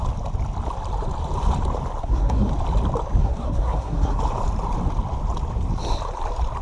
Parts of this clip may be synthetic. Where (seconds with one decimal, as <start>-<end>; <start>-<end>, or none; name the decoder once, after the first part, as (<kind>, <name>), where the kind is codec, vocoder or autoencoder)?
2.0-2.5 (codec, SNAC); 3.2-4.2